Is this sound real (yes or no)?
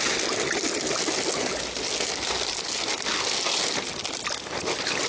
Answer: yes